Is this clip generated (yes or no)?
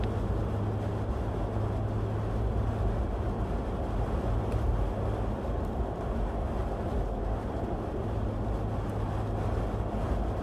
no